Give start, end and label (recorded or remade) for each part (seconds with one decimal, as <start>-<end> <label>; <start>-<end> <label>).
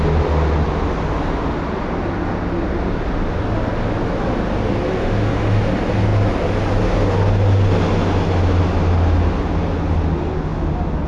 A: 0.0-5.0 recorded; 5.0-5.6 remade; 5.6-11.1 recorded